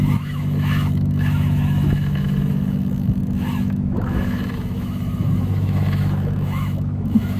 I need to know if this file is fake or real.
fake